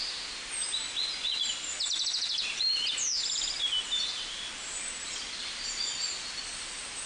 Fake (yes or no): no